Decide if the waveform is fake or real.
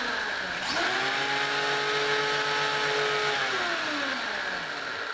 real